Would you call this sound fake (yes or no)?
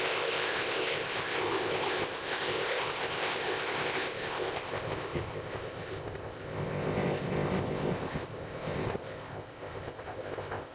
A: yes